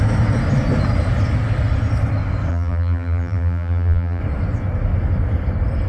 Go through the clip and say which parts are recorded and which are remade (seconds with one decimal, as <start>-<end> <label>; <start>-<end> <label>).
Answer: 0.0-2.5 recorded; 2.5-4.2 remade; 4.2-5.9 recorded

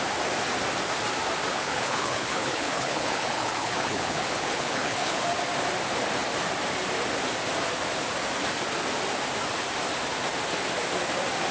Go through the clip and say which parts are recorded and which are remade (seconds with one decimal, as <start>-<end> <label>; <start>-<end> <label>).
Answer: 0.0-1.5 recorded; 1.5-5.2 remade; 5.2-11.5 recorded

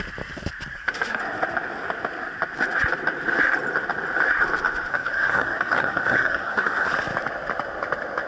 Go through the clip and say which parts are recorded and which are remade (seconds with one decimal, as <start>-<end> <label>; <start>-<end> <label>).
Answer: 0.0-0.7 recorded; 0.7-1.2 remade; 1.2-4.9 recorded; 4.9-6.9 remade; 6.9-8.3 recorded

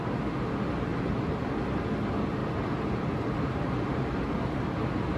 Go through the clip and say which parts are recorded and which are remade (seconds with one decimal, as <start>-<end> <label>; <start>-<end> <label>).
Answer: 0.0-0.9 recorded; 0.9-1.5 remade; 1.5-2.4 recorded; 2.4-5.2 remade

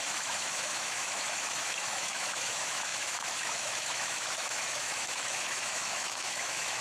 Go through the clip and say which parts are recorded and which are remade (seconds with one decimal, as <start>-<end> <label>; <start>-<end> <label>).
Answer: 0.0-6.8 remade

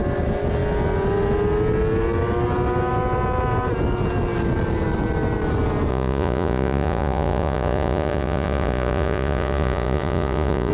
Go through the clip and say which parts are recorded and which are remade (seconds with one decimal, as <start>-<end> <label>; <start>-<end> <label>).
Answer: 0.0-5.9 recorded; 5.9-10.7 remade

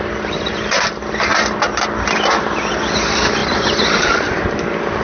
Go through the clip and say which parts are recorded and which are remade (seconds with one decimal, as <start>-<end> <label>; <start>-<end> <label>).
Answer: 0.0-5.0 recorded

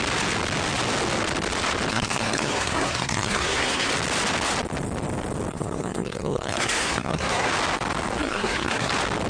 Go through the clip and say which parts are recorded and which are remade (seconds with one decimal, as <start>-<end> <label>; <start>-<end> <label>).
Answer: 0.0-1.9 recorded; 1.9-3.9 remade; 3.9-5.5 recorded; 5.5-7.5 remade; 7.5-8.2 recorded; 8.2-8.9 remade; 8.9-9.3 recorded